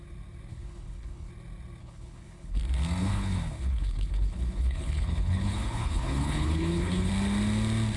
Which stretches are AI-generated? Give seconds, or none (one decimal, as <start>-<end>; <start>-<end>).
0.5-1.3; 1.8-2.6; 3.0-7.1